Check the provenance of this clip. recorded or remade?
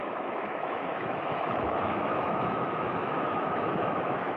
remade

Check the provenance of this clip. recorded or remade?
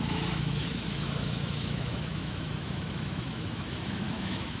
remade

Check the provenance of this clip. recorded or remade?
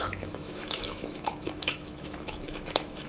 remade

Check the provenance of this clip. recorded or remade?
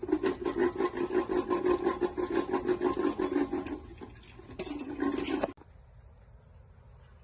recorded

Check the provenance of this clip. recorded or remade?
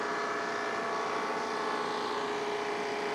recorded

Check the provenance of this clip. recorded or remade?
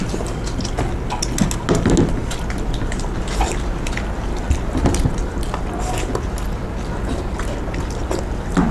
recorded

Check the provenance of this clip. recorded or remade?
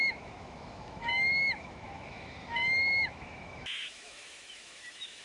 remade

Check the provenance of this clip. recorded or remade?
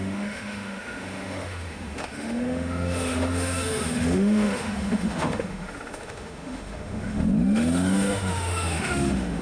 remade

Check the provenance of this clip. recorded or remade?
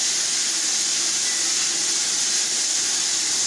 recorded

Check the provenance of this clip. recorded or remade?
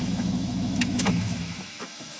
remade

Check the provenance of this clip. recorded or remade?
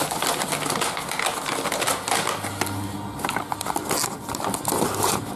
recorded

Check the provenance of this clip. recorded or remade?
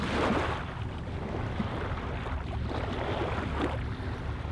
recorded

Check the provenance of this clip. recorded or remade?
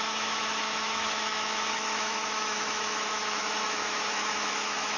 remade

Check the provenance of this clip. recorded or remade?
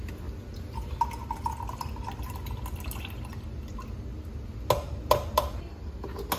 recorded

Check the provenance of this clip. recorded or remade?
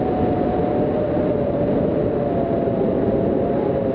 recorded